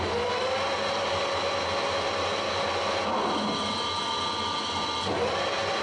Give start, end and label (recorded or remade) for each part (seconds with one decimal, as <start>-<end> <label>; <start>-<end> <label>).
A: 0.0-5.8 recorded